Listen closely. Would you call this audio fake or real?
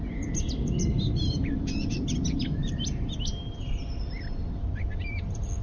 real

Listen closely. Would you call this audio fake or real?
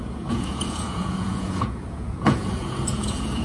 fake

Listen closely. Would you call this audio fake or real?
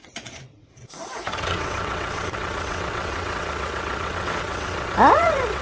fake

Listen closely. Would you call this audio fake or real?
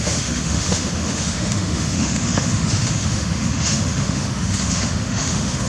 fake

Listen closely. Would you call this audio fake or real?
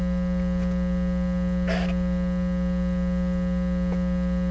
real